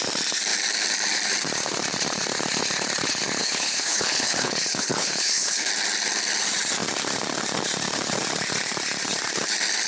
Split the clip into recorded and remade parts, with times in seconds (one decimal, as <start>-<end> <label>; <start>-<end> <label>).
0.0-3.4 recorded; 3.4-5.7 remade; 5.7-9.9 recorded